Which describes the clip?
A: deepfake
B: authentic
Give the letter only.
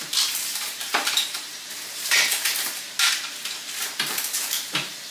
A